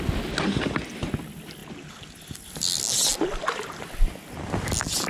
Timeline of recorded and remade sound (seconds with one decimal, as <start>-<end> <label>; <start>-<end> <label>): 0.0-5.1 recorded